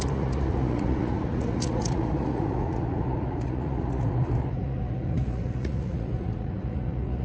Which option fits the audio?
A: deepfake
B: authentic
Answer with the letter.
A